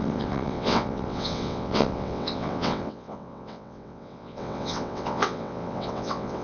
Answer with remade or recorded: remade